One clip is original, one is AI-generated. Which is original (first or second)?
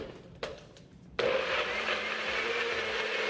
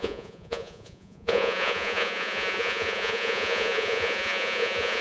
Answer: first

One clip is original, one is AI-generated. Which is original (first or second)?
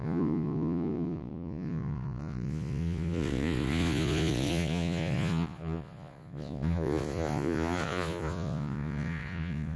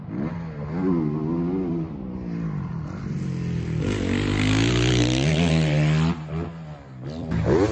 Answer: second